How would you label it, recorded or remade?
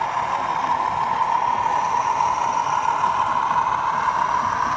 recorded